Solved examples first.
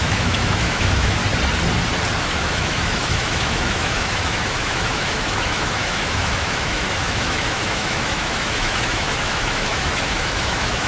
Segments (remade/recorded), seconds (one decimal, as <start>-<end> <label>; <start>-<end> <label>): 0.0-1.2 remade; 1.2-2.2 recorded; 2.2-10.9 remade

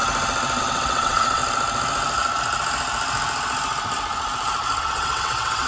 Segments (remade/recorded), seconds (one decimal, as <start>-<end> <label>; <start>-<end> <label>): 0.0-0.6 recorded; 0.6-1.4 remade; 1.4-4.8 recorded; 4.8-5.7 remade

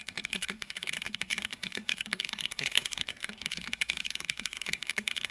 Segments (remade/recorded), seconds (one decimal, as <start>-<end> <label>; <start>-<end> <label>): 0.0-5.3 remade